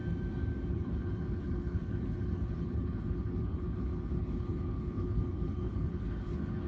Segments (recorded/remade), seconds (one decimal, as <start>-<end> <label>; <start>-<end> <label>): 0.0-0.7 recorded; 0.7-6.7 remade